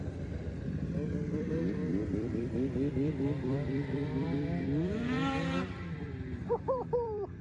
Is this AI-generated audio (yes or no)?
yes